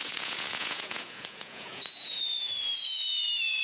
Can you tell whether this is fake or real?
fake